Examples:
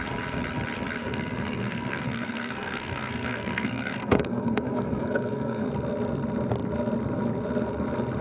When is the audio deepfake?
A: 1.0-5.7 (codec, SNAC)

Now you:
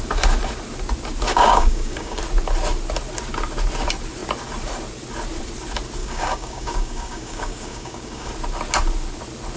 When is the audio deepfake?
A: 1.3-2.2 (codec, DAC); 6.0-8.3